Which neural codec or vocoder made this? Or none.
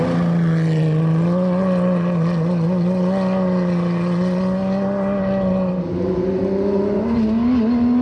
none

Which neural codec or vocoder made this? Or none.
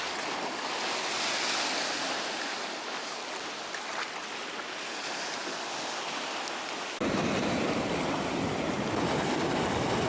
none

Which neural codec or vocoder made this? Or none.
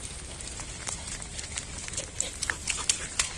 none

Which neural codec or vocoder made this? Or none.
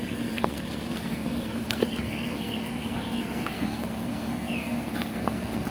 codec, SNAC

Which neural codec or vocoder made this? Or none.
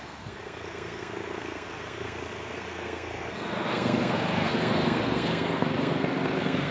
codec, SNAC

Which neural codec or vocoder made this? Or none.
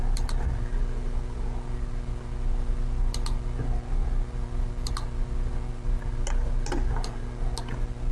none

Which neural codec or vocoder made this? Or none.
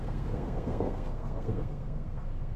codec, SNAC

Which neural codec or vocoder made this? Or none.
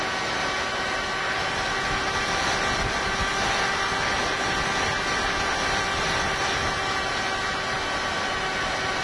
none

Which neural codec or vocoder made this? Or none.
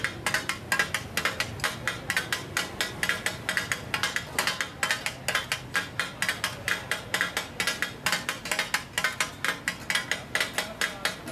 none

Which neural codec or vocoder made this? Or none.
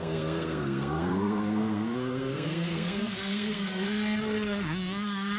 codec, SNAC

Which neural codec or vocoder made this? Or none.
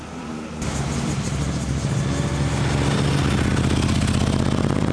none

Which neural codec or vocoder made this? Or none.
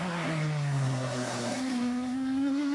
codec, SNAC